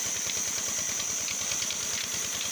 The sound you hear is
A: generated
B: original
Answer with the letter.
B